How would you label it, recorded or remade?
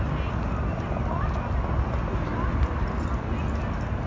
recorded